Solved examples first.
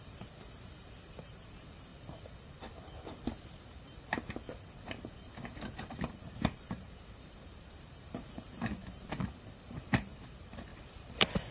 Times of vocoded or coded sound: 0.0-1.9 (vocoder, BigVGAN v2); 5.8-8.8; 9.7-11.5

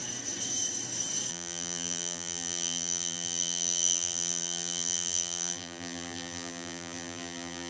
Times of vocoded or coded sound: 1.3-7.7 (vocoder, BigVGAN v2)

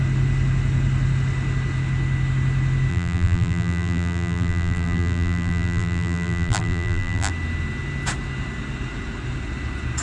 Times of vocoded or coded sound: 2.9-7.3 (vocoder, BigVGAN v2)

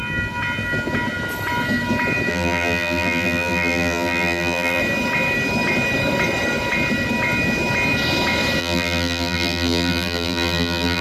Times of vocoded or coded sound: 2.3-4.8 (vocoder, BigVGAN v2); 8.6-11.0

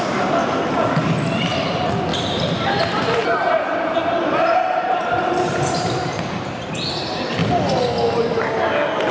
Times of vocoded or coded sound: 2.1-6.9 (vocoder, BigVGAN v2)

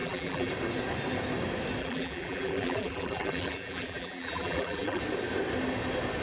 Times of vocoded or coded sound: 0.0-0.5 (vocoder, BigVGAN v2); 1.8-5.0